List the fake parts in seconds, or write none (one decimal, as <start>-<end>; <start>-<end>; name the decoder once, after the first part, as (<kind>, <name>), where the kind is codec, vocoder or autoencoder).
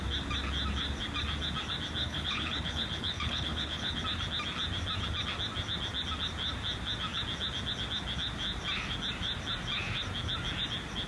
2.0-4.0 (codec, HILCodec)